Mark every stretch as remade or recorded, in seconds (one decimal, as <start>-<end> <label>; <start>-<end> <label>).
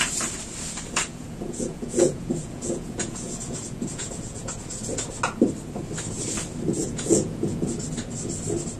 0.0-1.1 recorded; 1.1-4.5 remade; 4.5-6.8 recorded; 6.8-7.7 remade; 7.7-8.8 recorded